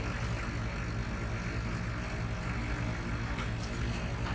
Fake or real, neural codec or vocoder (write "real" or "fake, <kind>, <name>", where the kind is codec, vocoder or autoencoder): real